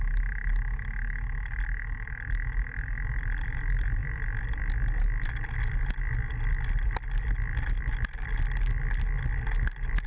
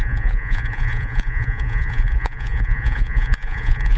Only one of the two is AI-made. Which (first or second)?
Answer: second